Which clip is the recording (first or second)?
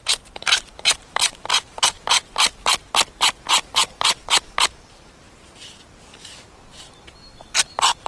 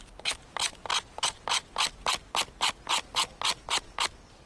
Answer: second